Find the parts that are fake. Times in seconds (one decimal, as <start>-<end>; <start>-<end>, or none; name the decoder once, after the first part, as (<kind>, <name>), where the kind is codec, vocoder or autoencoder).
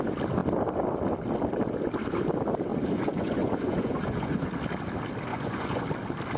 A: 2.7-4.5 (vocoder, Vocos); 5.3-5.8